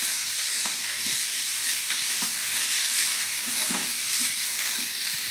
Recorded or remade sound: remade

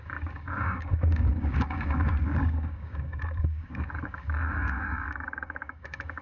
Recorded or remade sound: remade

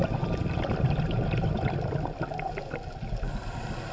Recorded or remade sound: recorded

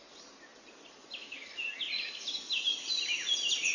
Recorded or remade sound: recorded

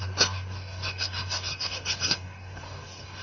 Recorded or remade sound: remade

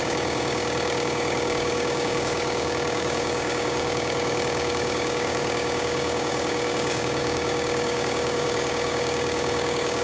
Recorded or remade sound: remade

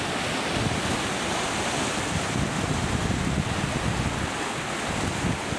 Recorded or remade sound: recorded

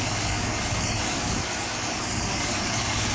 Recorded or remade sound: remade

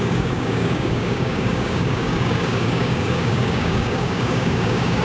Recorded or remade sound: remade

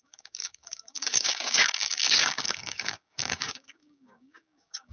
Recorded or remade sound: remade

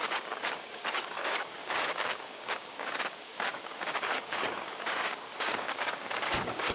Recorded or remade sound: remade